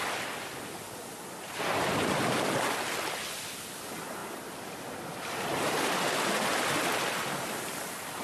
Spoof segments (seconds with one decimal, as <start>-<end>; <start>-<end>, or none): none